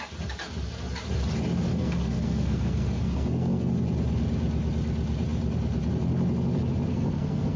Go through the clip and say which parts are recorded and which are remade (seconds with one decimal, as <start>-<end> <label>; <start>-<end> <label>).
0.0-1.7 recorded; 1.7-3.7 remade; 3.7-6.9 recorded; 6.9-7.6 remade